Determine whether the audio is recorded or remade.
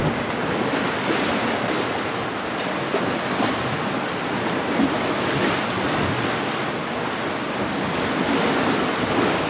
recorded